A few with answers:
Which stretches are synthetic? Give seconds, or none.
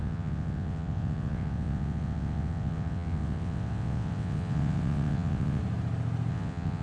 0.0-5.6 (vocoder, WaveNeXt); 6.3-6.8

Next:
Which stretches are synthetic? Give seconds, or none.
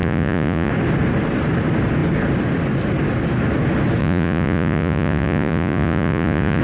0.0-0.7 (vocoder, Vocos); 4.0-6.6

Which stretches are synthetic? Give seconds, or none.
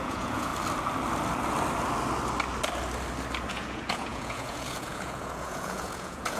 0.0-0.5 (vocoder, Vocos); 3.5-6.4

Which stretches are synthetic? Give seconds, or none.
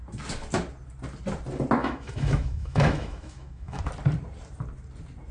1.8-3.8 (autoencoder, DAC-VAE)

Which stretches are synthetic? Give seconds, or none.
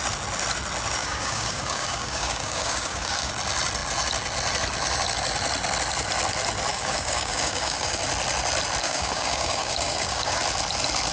1.0-3.3 (codec, DAC); 6.7-8.0; 8.8-10.4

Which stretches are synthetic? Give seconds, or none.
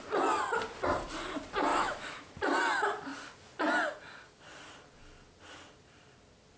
1.7-2.3 (autoencoder, DAC-VAE)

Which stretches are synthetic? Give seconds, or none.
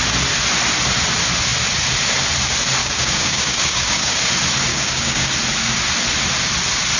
2.8-4.2 (codec, DAC); 4.7-5.3